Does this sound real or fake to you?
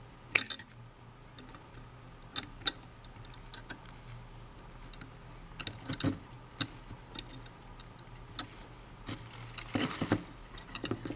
real